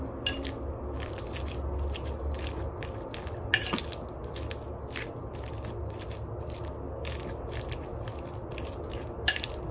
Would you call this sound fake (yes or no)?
no